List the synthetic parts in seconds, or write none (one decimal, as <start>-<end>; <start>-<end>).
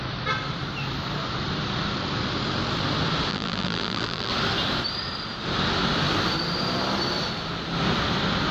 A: 3.3-4.3